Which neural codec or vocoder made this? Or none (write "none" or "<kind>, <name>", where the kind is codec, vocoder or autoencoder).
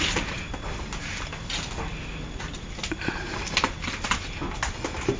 none